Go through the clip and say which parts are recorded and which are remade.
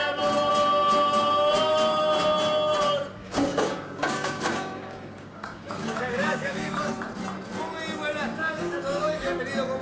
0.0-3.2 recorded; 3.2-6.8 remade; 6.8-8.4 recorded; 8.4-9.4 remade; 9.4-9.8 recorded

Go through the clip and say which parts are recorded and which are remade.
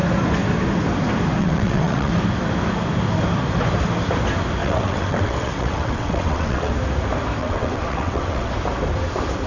0.0-1.4 recorded; 1.4-2.1 remade; 2.1-4.6 recorded; 4.6-6.7 remade; 6.7-7.4 recorded; 7.4-8.5 remade; 8.5-9.5 recorded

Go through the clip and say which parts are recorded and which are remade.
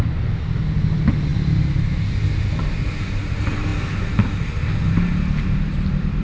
0.0-6.2 recorded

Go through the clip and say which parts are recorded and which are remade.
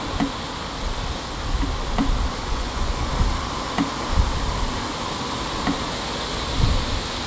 0.0-2.4 recorded; 2.4-3.1 remade; 3.1-7.3 recorded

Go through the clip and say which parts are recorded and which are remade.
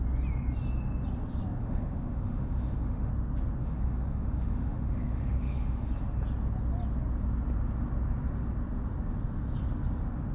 0.0-1.6 recorded; 1.6-3.1 remade; 3.1-3.6 recorded; 3.6-5.9 remade; 5.9-10.3 recorded